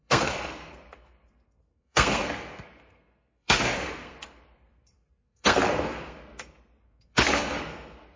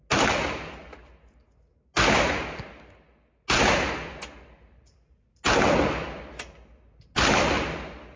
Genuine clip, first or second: second